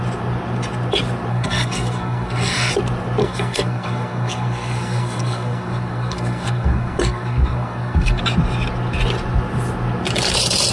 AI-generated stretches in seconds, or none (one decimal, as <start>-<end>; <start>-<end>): 1.3-2.7; 3.2-8.2